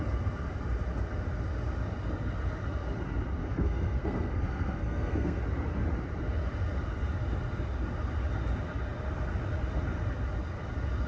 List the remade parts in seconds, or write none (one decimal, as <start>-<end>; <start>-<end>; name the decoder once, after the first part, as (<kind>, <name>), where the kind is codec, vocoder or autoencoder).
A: 3.4-5.4 (codec, SNAC)